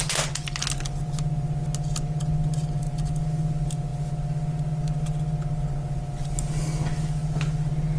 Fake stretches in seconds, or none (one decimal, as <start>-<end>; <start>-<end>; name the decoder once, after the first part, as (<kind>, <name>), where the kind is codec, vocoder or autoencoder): none